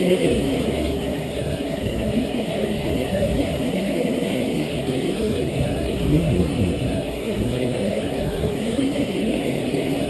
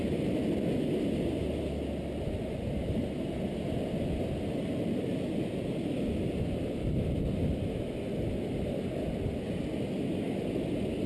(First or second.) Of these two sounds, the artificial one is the first